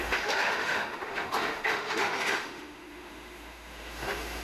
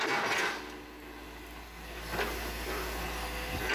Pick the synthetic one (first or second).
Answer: first